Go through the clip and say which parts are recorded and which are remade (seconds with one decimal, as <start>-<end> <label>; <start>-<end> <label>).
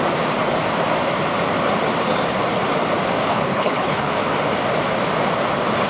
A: 0.0-3.3 recorded; 3.3-4.1 remade; 4.1-5.9 recorded